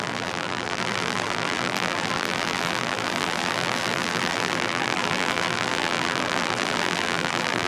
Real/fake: fake